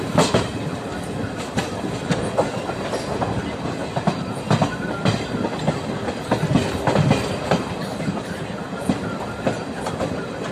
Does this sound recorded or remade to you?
recorded